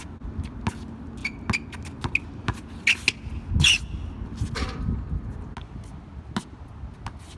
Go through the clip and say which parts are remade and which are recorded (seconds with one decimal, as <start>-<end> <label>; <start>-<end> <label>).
0.0-7.4 recorded